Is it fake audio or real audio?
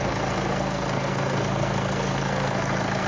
fake